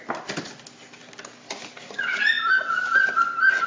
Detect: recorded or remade recorded